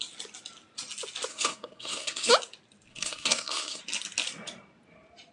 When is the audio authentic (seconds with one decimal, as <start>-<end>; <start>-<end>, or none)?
0.0-1.3; 2.3-2.9; 3.8-5.3